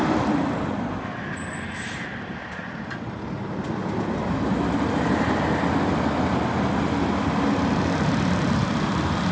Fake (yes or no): no